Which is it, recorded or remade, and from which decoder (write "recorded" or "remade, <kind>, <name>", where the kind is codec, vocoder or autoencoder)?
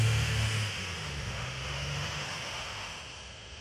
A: remade, autoencoder, DAC-VAE